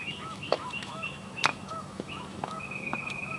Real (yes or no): no